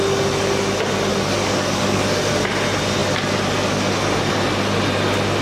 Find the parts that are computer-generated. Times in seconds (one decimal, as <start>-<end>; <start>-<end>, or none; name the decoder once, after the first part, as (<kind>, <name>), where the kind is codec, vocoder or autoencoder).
1.1-2.3 (codec, DAC)